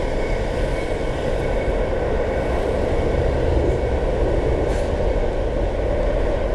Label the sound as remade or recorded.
recorded